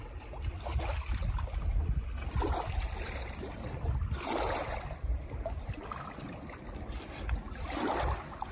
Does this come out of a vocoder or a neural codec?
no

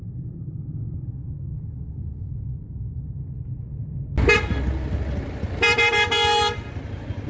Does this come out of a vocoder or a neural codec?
no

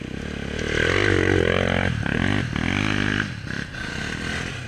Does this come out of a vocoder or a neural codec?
no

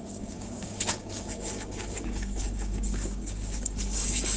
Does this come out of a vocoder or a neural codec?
yes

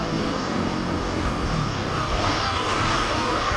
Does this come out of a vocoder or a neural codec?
yes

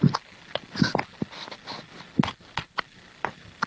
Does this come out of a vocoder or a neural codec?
no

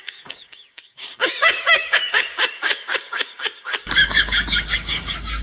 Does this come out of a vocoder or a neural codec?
yes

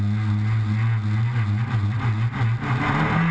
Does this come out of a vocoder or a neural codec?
no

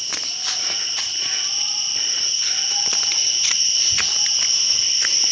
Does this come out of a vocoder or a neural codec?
no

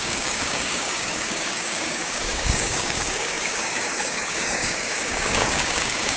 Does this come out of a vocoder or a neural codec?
yes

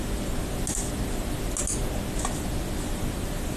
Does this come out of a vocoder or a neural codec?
no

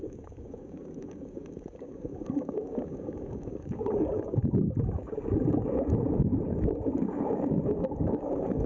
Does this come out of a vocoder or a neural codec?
yes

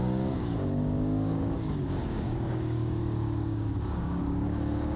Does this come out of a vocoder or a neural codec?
yes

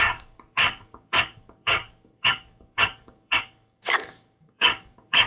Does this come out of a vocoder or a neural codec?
yes